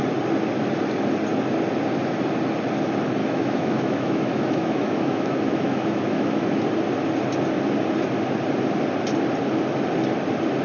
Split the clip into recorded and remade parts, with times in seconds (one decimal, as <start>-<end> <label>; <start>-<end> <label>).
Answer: 0.0-3.2 recorded; 3.2-6.4 remade; 6.4-10.6 recorded